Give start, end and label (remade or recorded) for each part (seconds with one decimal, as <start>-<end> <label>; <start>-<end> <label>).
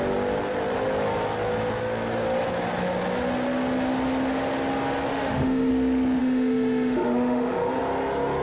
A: 0.0-5.1 recorded; 5.1-5.7 remade; 5.7-6.2 recorded; 6.2-7.8 remade; 7.8-8.4 recorded